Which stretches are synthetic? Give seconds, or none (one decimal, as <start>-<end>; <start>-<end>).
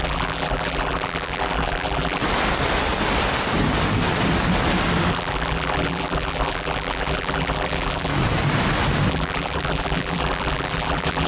0.0-2.2; 5.1-8.1; 9.1-11.3